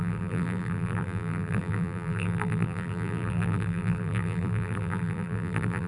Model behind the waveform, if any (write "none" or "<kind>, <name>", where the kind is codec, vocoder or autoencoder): vocoder, BigVGAN v2